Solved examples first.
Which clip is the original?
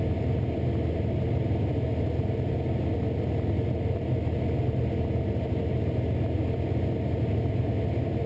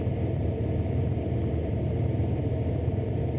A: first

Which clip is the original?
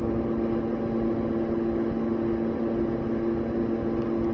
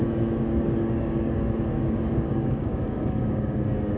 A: first